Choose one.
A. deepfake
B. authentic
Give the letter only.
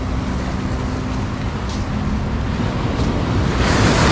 B